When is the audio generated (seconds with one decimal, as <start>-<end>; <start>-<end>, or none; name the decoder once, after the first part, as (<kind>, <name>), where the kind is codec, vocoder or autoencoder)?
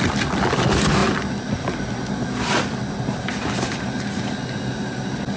none